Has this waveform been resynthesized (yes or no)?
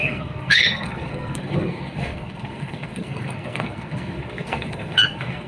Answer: yes